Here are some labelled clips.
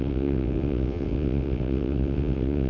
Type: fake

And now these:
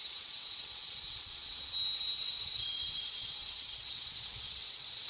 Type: fake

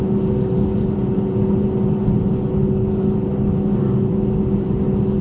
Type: real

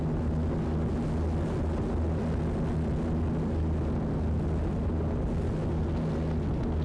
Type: real